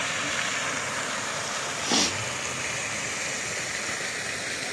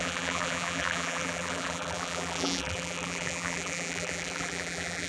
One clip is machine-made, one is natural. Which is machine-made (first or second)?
second